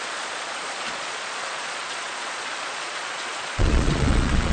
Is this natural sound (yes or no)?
no